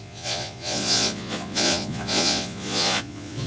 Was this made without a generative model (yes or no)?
no